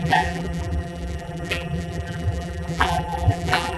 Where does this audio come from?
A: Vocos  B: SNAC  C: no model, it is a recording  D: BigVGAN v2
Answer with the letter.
D